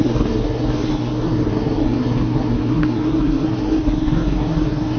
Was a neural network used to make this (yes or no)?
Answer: yes